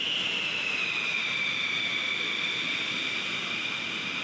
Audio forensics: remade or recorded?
recorded